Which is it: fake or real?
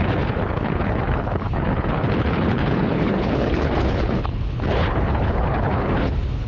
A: fake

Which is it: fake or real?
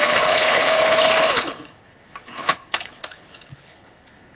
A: fake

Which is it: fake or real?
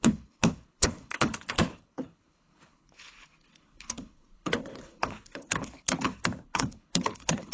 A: fake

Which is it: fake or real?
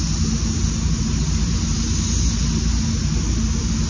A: real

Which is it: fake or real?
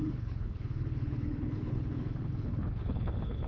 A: fake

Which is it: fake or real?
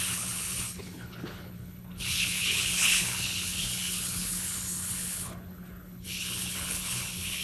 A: fake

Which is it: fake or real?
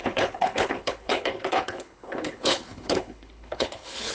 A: fake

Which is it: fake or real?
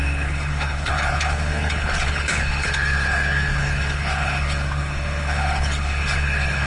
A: fake